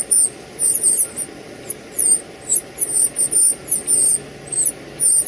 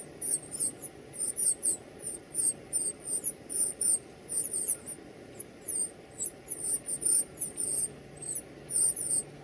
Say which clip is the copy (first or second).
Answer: second